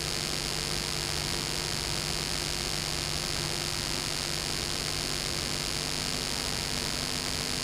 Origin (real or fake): real